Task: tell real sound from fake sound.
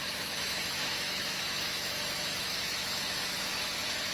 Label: fake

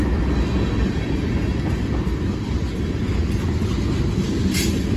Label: real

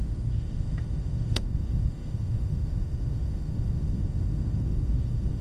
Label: fake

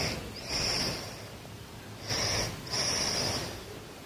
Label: real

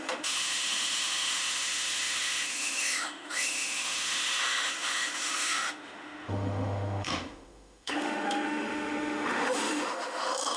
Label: fake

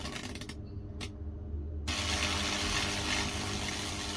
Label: real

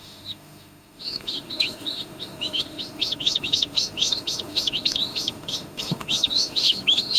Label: fake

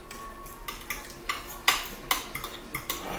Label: real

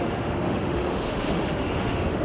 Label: fake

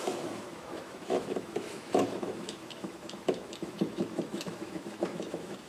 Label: fake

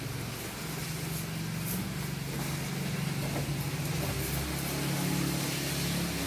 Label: real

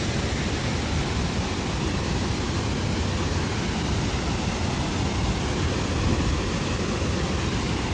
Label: real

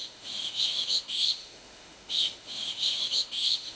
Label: fake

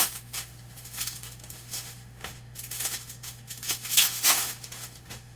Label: fake